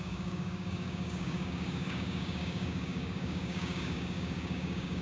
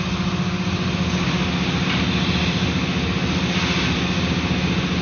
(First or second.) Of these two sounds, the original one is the second